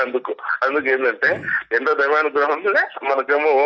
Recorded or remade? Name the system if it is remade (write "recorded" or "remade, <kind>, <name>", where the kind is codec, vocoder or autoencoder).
recorded